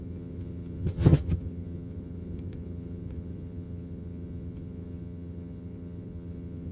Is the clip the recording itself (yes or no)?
no